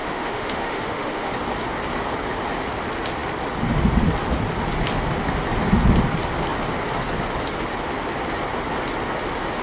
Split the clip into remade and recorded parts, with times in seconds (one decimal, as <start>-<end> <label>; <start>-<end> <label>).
0.0-1.3 remade; 1.3-9.6 recorded